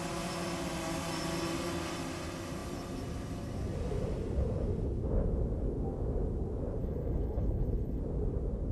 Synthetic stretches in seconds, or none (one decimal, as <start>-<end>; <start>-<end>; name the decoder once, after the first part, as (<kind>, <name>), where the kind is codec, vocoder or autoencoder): 6.8-8.0 (codec, HILCodec)